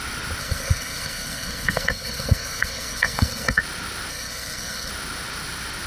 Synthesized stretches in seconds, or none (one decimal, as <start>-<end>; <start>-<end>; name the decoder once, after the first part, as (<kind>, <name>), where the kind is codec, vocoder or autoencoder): 0.4-3.6 (codec, SNAC); 4.1-4.9